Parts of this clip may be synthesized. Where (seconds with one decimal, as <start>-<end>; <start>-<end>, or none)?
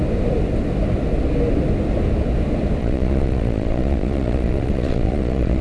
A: 2.8-5.6